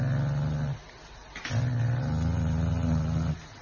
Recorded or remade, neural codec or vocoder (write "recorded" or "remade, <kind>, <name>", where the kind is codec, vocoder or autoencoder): recorded